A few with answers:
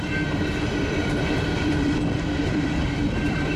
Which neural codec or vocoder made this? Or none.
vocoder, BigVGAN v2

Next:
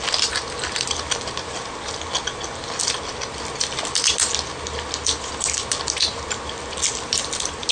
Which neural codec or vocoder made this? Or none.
none